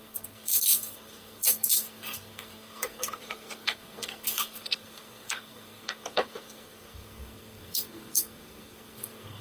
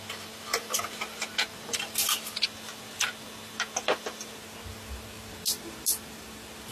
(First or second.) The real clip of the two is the second